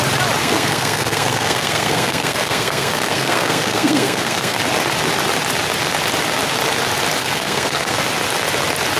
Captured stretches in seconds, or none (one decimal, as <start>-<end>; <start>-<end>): 0.0-0.4; 4.6-7.2; 8.0-9.0